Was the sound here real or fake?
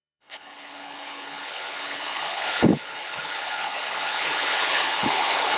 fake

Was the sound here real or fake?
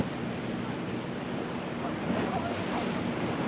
real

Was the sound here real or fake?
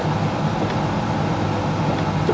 real